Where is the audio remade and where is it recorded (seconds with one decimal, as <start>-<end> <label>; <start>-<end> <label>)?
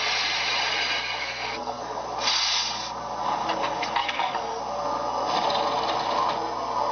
0.0-1.2 recorded; 1.2-1.8 remade; 1.8-4.0 recorded; 4.0-4.6 remade; 4.6-6.9 recorded